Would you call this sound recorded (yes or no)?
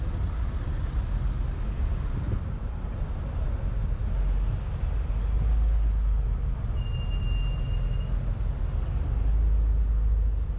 yes